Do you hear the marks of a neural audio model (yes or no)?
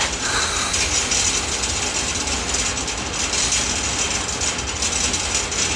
no